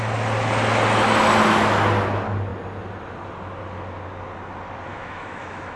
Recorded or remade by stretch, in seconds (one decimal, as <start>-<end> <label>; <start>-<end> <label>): 0.0-4.9 recorded; 4.9-5.8 remade